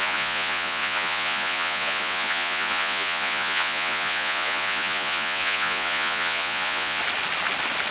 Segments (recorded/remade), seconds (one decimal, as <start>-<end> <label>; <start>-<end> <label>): 0.0-7.0 remade; 7.0-7.9 recorded